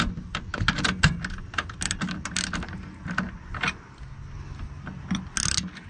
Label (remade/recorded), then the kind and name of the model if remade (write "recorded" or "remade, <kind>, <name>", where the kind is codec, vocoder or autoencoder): recorded